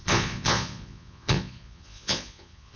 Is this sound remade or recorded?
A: remade